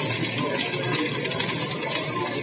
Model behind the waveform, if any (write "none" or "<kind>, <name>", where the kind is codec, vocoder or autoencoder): none